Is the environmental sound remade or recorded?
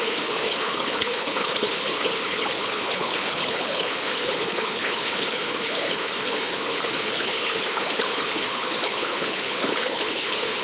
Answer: remade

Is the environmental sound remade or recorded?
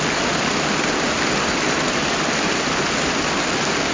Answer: recorded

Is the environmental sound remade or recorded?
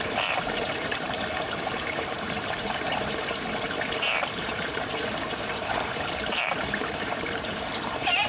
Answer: remade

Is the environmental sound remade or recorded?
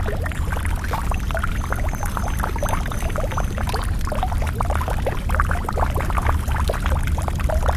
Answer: recorded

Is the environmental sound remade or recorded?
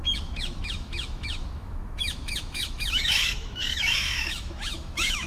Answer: remade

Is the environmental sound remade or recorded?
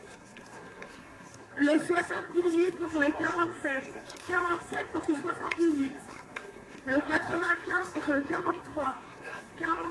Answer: remade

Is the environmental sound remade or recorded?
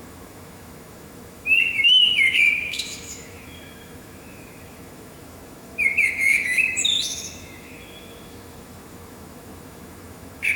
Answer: remade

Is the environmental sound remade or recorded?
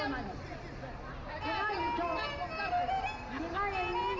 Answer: recorded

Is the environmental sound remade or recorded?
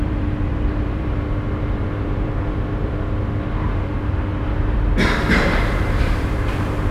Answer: remade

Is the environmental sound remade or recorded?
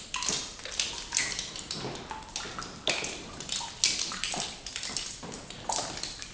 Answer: recorded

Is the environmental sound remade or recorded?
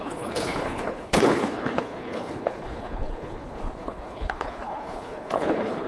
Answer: remade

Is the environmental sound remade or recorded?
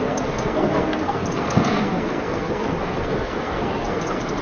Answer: remade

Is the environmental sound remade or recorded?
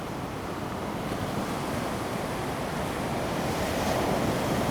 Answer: recorded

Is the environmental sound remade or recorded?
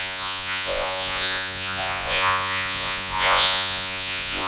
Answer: remade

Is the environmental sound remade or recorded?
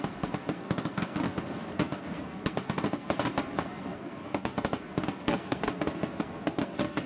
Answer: remade